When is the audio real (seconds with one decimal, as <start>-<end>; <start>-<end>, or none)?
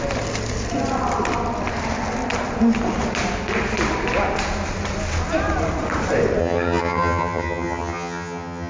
0.0-6.4